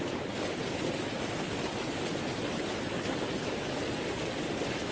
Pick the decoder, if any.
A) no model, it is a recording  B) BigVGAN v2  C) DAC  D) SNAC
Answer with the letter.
A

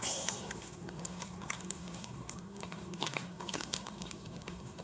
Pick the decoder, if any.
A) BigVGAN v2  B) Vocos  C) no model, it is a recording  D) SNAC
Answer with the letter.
D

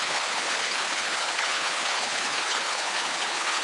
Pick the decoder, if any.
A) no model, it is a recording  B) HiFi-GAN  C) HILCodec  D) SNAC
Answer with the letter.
C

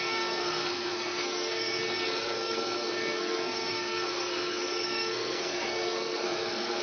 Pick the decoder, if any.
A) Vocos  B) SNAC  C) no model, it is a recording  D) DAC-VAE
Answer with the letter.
B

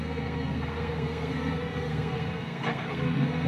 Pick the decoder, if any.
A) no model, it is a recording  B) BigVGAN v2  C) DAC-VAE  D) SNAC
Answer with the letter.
D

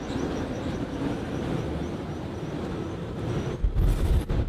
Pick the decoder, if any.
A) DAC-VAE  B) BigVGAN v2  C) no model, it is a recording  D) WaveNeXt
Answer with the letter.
B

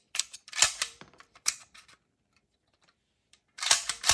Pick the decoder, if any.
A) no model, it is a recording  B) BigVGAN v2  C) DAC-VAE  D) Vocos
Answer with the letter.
B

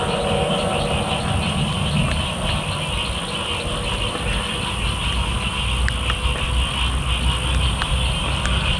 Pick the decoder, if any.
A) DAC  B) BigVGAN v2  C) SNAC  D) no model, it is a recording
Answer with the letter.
D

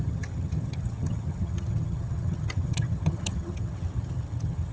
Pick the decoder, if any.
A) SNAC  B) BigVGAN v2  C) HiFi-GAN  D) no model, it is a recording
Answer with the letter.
C